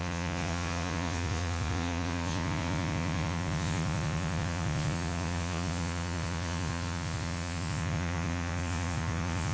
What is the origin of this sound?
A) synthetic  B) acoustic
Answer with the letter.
A